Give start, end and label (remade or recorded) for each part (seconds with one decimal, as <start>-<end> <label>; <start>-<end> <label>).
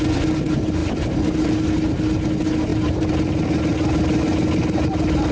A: 0.0-5.3 recorded